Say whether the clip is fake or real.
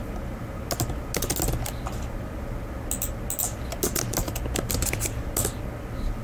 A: real